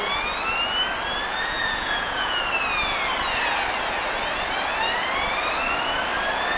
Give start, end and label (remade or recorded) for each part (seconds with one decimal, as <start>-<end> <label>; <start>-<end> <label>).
0.0-1.3 recorded; 1.3-2.4 remade; 2.4-6.6 recorded